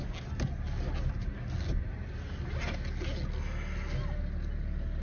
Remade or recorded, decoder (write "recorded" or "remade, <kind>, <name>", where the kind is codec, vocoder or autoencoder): recorded